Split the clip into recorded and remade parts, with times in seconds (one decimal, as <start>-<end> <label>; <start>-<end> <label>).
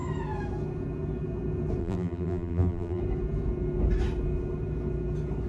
0.0-1.8 recorded; 1.8-3.0 remade; 3.0-5.5 recorded